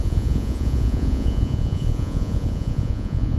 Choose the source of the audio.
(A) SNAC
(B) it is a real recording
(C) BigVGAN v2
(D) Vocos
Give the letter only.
D